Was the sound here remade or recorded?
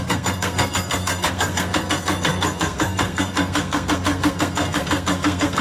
remade